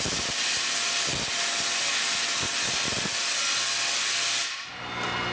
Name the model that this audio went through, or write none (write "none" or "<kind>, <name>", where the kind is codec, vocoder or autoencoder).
none